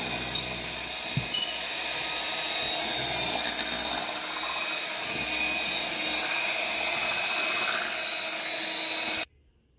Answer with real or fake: real